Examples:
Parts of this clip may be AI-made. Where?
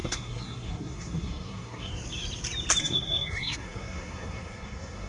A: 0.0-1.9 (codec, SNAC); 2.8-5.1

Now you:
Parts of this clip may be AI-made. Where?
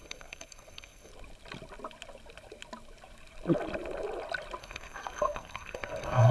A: 0.0-1.1 (codec, SNAC); 4.6-6.3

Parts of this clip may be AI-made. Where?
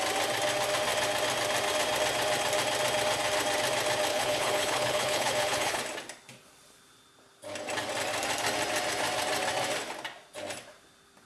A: 4.1-5.8 (codec, HILCodec)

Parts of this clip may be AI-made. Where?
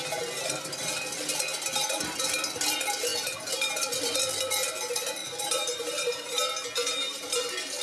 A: 5.2-6.2 (vocoder, BigVGAN v2)